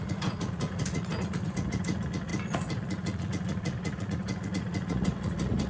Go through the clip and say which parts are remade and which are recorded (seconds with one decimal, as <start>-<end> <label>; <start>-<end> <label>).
0.0-5.7 remade